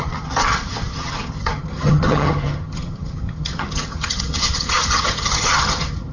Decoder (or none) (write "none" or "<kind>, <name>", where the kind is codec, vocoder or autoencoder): vocoder, HiFi-GAN